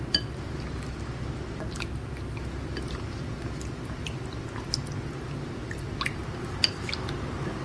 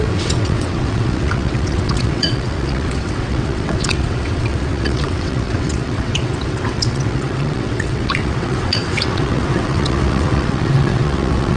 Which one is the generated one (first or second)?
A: second